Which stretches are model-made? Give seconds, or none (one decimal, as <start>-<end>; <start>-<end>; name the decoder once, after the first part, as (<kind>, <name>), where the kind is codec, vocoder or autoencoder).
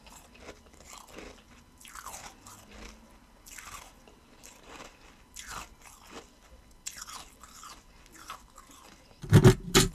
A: none